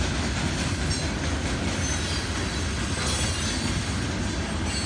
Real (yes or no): yes